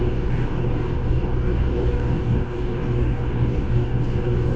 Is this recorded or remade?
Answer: remade